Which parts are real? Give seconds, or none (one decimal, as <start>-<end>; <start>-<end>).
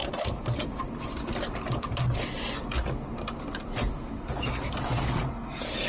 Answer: 0.0-5.9